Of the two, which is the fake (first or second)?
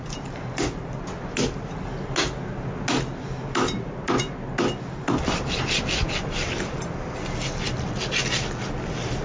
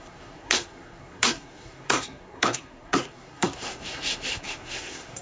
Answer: second